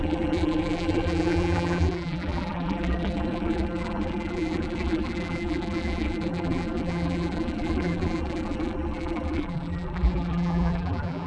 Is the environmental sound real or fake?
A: fake